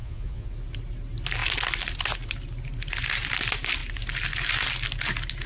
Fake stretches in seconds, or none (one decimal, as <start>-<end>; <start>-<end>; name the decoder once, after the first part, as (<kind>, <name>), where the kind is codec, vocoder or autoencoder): 0.0-0.5 (vocoder, Vocos)